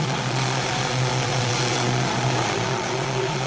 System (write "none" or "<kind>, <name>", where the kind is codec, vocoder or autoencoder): vocoder, Vocos